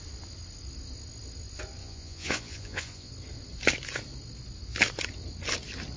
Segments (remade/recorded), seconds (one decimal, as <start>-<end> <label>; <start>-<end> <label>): 0.0-1.8 recorded; 1.8-3.1 remade; 3.1-6.0 recorded